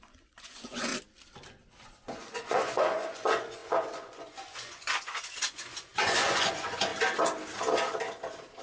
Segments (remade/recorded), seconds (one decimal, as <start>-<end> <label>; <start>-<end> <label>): 0.0-0.9 remade; 0.9-1.8 recorded; 1.8-6.9 remade; 6.9-8.6 recorded